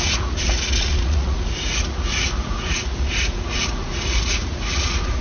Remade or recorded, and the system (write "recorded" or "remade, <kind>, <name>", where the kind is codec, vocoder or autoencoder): remade, vocoder, Vocos